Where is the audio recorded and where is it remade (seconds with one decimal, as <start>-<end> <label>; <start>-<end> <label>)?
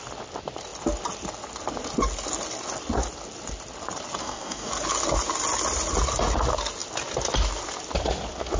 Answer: 0.0-4.2 recorded; 4.2-4.7 remade; 4.7-8.6 recorded